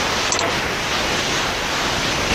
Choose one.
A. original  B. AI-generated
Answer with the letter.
A